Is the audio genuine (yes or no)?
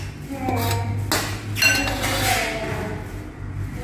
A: yes